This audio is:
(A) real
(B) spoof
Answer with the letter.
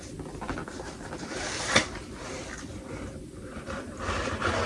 B